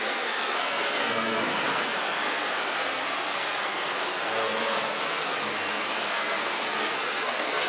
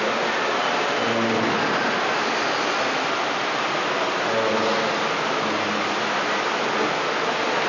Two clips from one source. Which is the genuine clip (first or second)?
second